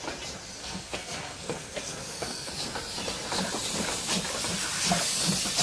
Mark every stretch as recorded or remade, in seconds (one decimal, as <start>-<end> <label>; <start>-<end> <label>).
0.0-0.6 recorded; 0.6-2.5 remade; 2.5-5.6 recorded